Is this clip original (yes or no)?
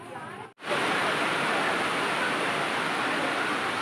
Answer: yes